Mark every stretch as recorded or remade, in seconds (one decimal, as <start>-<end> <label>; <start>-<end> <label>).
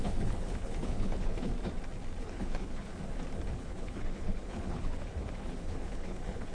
0.0-1.5 remade; 1.5-2.2 recorded; 2.2-2.9 remade; 2.9-3.5 recorded; 3.5-6.5 remade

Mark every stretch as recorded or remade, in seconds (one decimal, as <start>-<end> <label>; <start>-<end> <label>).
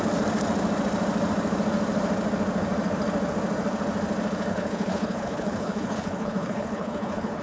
0.0-4.5 recorded; 4.5-7.4 remade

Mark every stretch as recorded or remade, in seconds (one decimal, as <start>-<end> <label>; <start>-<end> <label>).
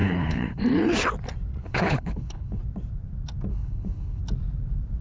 0.0-0.6 remade; 0.6-1.6 recorded; 1.6-2.6 remade; 2.6-3.5 recorded; 3.5-4.2 remade; 4.2-5.0 recorded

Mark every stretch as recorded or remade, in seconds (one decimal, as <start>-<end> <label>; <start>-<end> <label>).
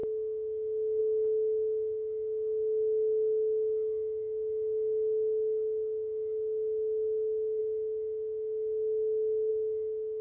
0.0-10.2 recorded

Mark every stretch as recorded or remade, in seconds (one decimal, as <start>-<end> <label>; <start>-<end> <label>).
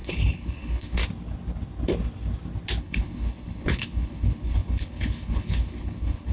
0.0-1.0 remade; 1.0-2.8 recorded; 2.8-6.3 remade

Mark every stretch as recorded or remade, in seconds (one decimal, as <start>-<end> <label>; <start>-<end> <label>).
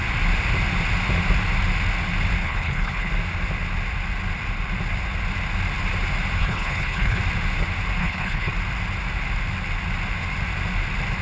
0.0-2.4 recorded; 2.4-3.1 remade; 3.1-6.4 recorded; 6.4-7.2 remade; 7.2-8.0 recorded; 8.0-8.5 remade; 8.5-11.2 recorded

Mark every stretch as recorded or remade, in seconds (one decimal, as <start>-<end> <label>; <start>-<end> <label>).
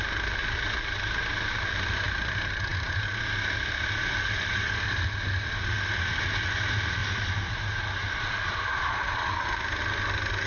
0.0-10.5 recorded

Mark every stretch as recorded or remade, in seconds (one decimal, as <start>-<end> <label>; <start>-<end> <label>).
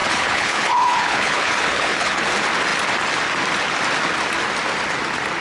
0.0-2.2 remade; 2.2-5.4 recorded